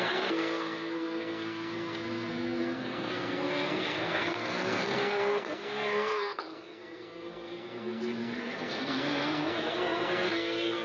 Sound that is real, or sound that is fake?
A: fake